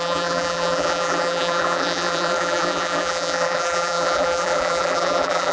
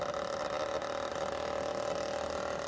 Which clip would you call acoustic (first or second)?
second